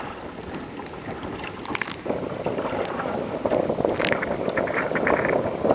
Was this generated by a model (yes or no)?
no